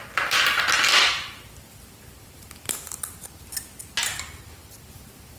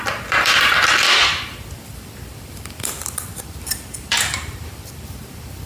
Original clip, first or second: first